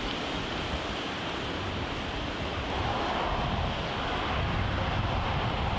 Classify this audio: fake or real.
real